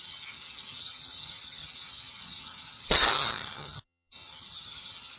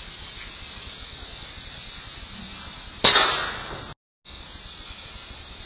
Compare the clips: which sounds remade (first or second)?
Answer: first